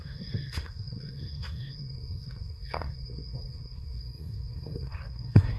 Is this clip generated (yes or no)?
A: yes